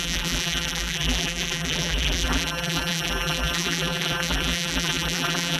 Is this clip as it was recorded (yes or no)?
no